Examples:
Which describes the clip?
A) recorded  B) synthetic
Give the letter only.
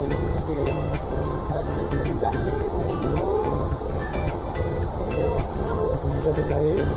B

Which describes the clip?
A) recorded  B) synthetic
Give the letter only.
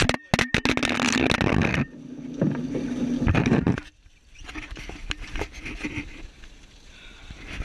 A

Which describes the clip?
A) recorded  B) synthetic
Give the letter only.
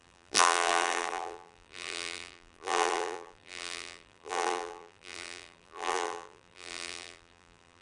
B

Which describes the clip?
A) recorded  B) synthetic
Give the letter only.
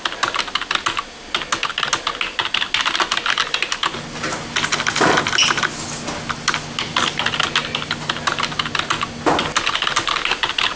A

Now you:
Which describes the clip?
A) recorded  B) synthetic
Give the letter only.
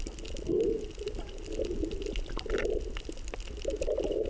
A